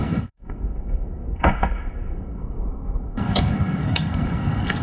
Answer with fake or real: fake